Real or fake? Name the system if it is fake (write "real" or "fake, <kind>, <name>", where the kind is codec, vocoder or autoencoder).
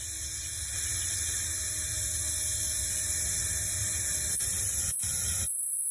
real